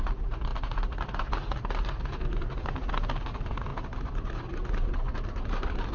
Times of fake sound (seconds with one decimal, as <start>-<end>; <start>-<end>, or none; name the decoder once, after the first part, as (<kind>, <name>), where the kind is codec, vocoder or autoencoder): none